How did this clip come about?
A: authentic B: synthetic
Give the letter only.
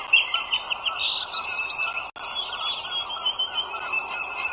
A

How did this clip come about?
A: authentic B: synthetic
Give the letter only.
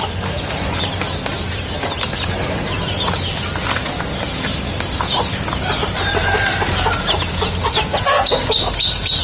A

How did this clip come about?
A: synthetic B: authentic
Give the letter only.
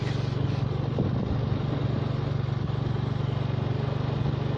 B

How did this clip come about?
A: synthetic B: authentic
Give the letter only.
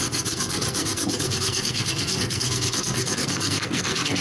A